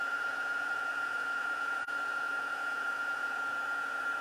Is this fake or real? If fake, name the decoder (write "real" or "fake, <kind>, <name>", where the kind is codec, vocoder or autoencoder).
fake, vocoder, Vocos